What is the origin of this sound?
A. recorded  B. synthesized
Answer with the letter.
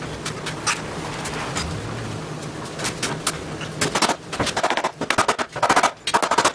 A